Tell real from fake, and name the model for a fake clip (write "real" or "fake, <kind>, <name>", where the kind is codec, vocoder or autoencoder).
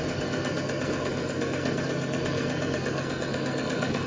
fake, codec, SNAC